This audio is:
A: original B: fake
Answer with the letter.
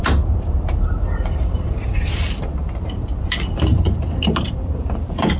B